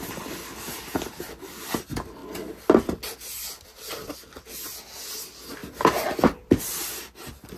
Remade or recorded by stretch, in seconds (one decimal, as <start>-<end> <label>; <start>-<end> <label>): 0.0-7.6 recorded